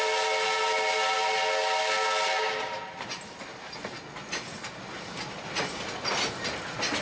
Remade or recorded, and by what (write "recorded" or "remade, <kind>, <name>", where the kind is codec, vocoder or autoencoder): recorded